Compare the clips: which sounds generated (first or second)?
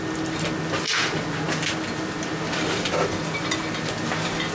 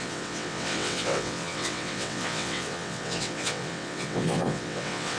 second